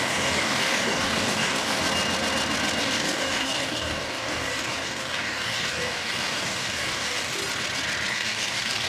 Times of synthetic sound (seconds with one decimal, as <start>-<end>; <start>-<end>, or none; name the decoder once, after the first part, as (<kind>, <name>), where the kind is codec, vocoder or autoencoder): 0.0-1.8 (codec, DAC); 2.8-7.4; 8.1-8.9